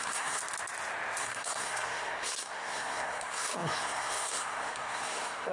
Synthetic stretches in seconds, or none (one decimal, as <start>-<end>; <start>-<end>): 0.0-0.4; 1.2-5.5